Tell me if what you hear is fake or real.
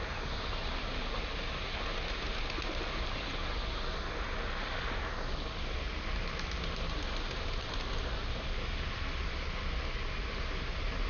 real